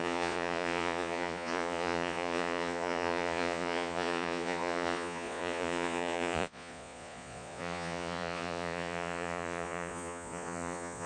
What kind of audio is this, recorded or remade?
remade